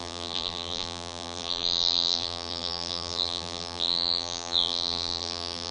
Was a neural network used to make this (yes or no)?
yes